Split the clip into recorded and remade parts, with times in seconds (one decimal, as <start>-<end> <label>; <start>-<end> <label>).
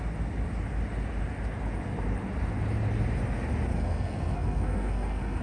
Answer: 0.0-3.7 recorded; 3.7-5.4 remade